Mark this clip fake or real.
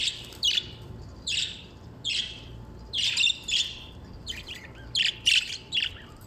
fake